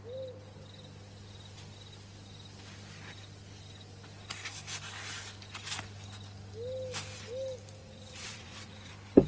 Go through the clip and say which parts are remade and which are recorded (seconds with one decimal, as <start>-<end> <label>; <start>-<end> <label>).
0.0-7.8 recorded; 7.8-8.9 remade; 8.9-9.3 recorded